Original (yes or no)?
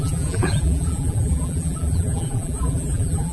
no